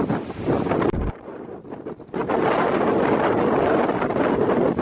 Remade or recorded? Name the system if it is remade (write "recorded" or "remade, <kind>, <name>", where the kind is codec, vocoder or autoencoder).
recorded